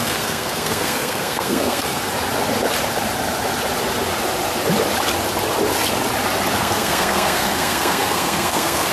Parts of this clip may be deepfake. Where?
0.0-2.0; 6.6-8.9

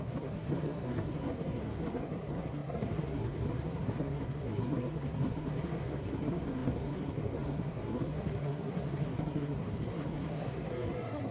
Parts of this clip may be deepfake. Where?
0.0-11.3